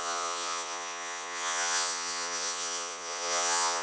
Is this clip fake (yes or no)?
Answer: yes